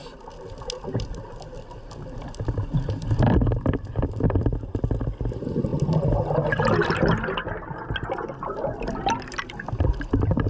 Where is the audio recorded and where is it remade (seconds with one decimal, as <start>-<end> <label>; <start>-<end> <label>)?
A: 0.0-10.5 recorded